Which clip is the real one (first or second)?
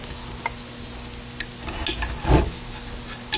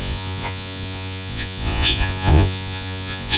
first